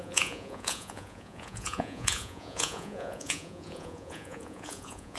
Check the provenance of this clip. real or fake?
fake